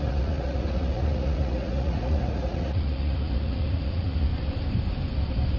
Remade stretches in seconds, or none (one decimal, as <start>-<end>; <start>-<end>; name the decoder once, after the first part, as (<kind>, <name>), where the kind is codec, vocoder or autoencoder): 0.0-4.3 (vocoder, Vocos)